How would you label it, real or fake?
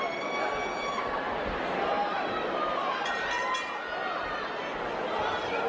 real